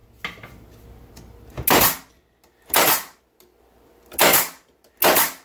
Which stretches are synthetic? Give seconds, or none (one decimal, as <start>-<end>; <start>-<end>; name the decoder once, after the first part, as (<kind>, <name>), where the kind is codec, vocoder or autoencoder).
none